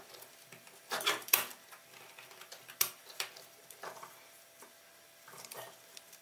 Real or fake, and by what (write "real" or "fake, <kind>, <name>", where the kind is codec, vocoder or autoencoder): fake, vocoder, BigVGAN v2